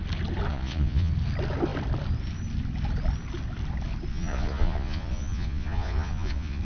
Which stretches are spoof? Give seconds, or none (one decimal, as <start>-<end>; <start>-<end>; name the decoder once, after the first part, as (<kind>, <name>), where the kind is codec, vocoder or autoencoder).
0.5-1.1 (vocoder, Vocos); 4.1-6.6